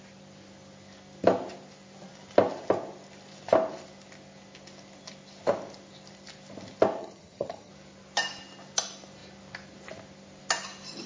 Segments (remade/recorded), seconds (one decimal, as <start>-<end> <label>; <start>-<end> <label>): 0.0-7.0 recorded; 7.0-7.7 remade; 7.7-11.1 recorded